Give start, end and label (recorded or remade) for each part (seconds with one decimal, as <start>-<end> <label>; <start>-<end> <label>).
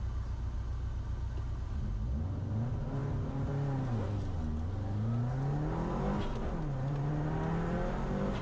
0.0-8.4 recorded